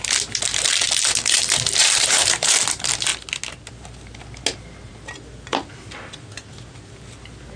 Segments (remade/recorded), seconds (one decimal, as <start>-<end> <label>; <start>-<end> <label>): 0.0-1.8 recorded; 1.8-2.6 remade; 2.6-7.6 recorded